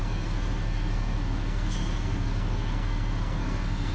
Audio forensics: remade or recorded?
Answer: remade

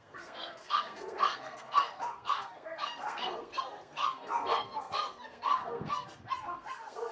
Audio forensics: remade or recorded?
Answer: remade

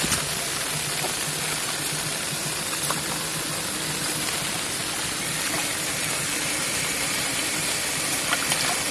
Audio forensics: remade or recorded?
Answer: recorded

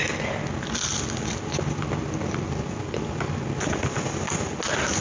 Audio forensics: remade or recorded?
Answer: recorded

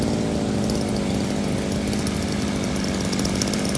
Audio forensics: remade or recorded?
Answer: recorded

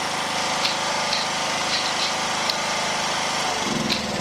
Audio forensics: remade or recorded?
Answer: recorded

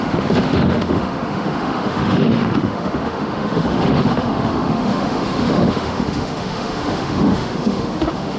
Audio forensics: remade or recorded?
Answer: remade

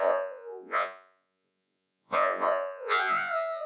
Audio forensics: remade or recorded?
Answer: remade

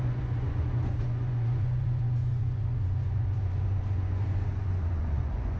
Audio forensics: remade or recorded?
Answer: remade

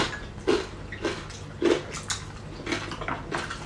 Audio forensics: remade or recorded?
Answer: recorded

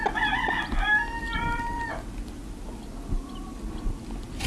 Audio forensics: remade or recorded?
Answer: recorded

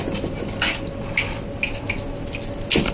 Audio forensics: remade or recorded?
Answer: recorded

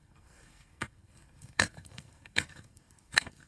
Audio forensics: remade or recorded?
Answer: remade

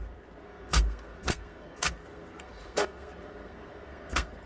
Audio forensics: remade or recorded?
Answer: remade